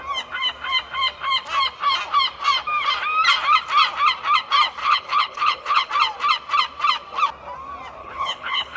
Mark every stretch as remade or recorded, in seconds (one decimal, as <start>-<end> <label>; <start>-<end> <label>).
0.0-4.8 recorded; 4.8-5.9 remade; 5.9-8.0 recorded; 8.0-8.8 remade